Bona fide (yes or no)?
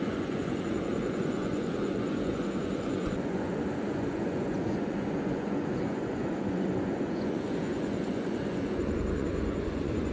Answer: no